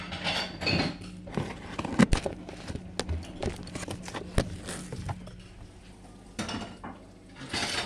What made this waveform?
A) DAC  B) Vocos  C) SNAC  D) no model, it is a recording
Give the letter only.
D